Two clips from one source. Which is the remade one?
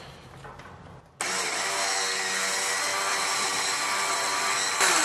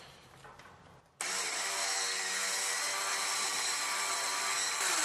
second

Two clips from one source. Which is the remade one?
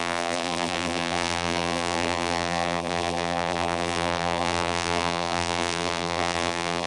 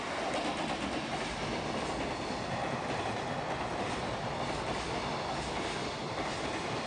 first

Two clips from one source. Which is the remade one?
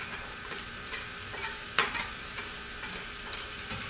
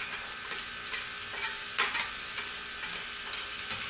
first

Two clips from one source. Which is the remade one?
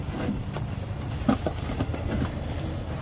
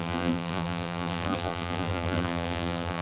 second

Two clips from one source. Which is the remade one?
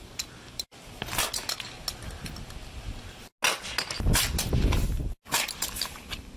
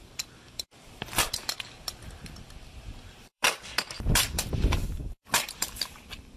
second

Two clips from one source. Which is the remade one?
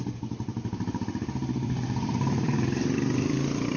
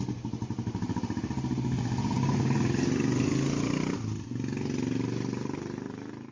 first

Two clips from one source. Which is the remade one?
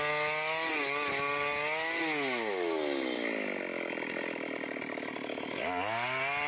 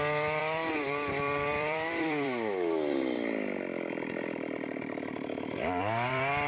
second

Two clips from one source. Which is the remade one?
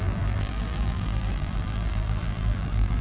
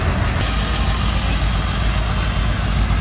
first